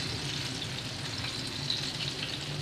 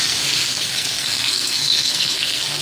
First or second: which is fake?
second